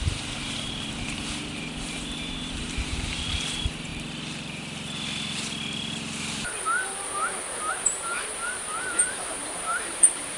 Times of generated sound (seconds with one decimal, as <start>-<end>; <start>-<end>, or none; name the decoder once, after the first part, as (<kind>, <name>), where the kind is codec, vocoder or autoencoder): 0.0-3.9 (vocoder, BigVGAN v2); 7.7-10.4